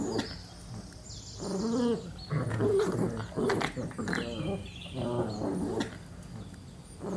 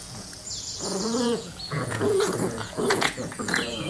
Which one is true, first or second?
first